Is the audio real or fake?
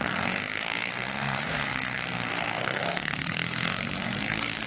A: fake